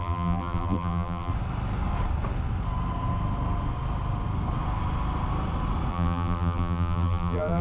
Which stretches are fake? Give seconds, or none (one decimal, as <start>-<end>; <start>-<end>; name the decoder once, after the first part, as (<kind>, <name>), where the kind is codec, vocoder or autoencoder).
0.0-1.3 (vocoder, BigVGAN v2); 5.9-7.6